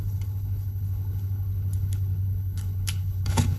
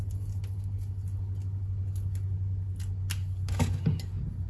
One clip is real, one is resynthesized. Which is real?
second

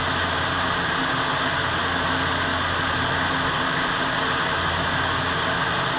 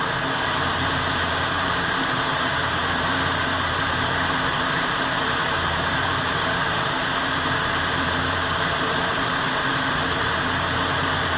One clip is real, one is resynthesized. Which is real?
first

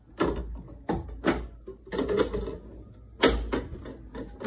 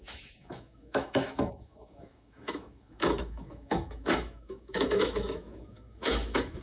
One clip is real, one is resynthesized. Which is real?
first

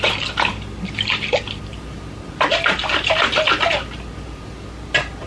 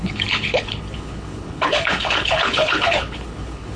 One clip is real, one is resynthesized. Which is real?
first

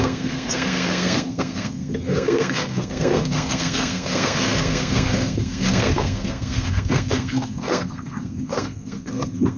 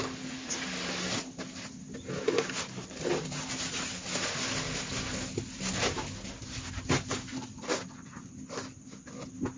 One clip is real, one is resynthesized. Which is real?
second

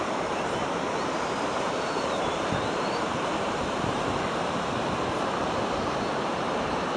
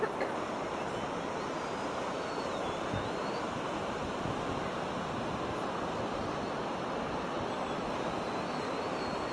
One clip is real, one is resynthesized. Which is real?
second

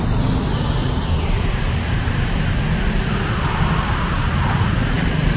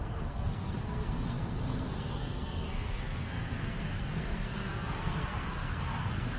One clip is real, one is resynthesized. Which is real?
first